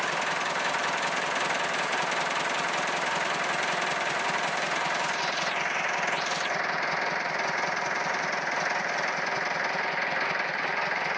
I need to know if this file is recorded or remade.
remade